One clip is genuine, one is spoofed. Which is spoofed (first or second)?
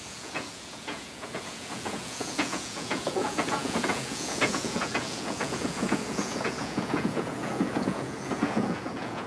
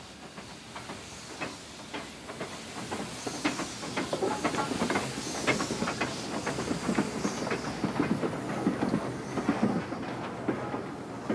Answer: first